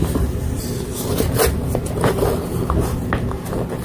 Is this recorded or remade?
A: recorded